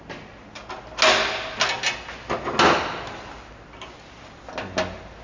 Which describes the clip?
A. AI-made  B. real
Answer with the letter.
B